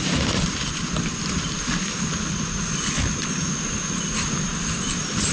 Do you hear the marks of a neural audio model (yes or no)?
no